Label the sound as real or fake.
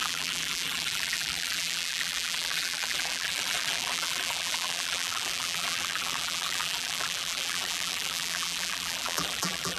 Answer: fake